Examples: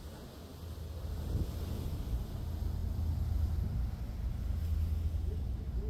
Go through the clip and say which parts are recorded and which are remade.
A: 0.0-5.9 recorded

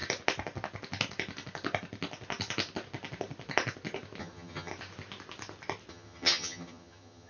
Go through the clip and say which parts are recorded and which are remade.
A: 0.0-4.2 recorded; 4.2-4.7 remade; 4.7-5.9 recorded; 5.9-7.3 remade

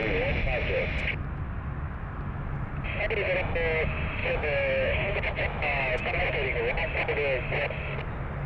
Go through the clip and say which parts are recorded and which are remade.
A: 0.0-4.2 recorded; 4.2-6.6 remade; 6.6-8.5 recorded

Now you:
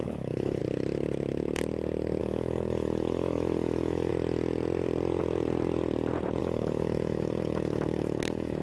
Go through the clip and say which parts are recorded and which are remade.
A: 0.0-0.6 remade; 0.6-2.2 recorded; 2.2-4.1 remade; 4.1-6.4 recorded; 6.4-8.6 remade

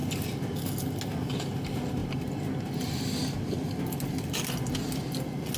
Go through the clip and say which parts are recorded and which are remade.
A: 0.0-5.6 recorded